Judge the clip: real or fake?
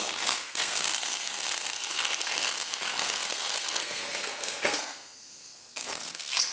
fake